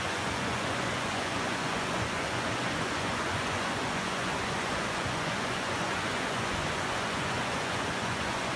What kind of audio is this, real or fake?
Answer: fake